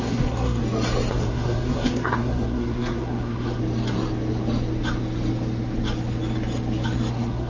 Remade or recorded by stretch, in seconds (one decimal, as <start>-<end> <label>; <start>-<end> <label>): 0.0-0.6 remade; 0.6-1.1 recorded; 1.1-3.6 remade; 3.6-7.1 recorded; 7.1-7.5 remade